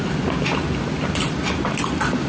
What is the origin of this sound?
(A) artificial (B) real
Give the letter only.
B